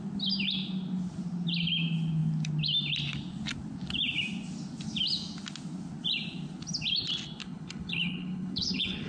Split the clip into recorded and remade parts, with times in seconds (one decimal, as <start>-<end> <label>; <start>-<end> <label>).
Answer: 0.0-7.4 recorded; 7.4-9.1 remade